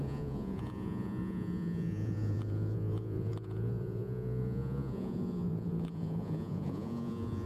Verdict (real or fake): fake